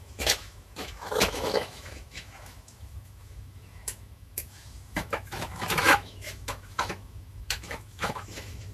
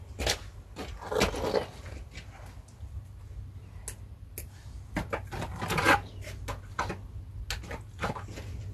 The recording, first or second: second